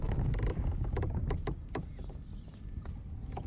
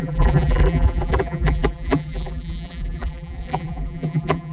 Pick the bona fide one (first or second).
first